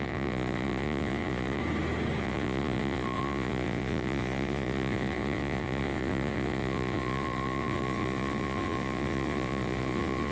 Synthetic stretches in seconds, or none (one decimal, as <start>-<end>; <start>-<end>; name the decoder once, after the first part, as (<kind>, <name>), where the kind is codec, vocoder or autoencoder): 0.0-1.6 (vocoder, Vocos); 2.2-10.3